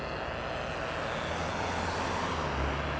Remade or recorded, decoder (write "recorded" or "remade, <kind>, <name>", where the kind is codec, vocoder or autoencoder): recorded